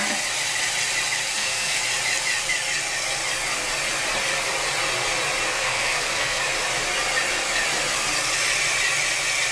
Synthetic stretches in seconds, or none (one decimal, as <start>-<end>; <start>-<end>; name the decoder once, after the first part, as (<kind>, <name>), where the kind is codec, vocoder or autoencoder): 1.3-1.8 (codec, SNAC); 5.5-6.4